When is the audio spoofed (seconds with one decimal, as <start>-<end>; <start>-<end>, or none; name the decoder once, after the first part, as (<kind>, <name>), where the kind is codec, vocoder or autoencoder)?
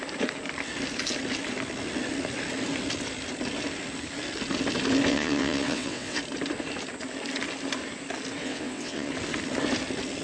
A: 5.1-6.2 (vocoder, WaveNeXt); 8.4-9.1